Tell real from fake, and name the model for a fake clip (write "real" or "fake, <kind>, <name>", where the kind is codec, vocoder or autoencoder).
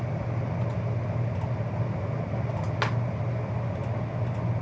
real